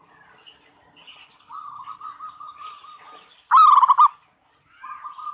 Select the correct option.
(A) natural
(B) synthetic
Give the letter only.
A